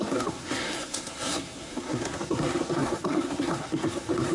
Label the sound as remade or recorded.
remade